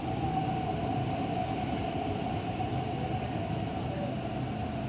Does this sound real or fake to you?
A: real